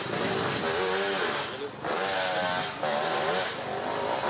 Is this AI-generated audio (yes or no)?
no